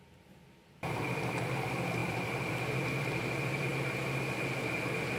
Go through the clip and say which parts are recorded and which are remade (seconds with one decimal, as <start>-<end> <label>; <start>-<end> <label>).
0.0-3.7 remade; 3.7-4.6 recorded; 4.6-5.2 remade